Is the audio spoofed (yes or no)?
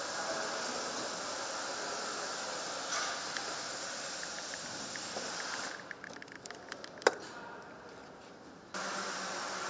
no